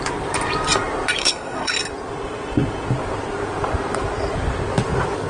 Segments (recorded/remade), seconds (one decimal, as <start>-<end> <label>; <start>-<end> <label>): 0.0-1.2 recorded; 1.2-1.7 remade; 1.7-5.3 recorded